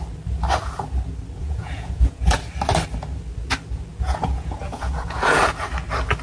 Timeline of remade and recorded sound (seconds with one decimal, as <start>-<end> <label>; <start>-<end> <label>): 0.0-1.4 recorded; 1.4-2.4 remade; 2.4-3.9 recorded; 3.9-5.4 remade; 5.4-6.2 recorded